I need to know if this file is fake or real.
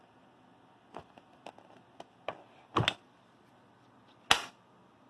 real